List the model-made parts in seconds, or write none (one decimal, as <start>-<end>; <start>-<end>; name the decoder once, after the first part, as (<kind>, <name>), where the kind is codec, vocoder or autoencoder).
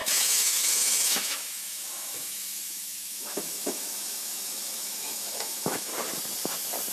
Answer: 0.0-5.9 (autoencoder, DAC-VAE)